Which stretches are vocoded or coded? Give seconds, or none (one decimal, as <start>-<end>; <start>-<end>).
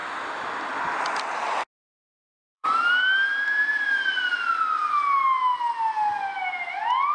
2.2-2.9